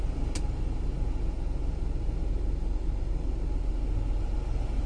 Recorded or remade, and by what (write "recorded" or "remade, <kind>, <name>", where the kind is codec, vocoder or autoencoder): recorded